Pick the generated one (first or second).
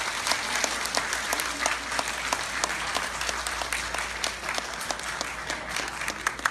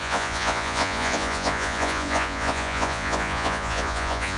second